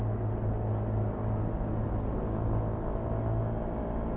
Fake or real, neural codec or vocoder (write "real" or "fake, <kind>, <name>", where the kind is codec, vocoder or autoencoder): real